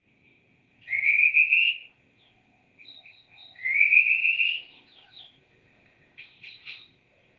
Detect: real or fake fake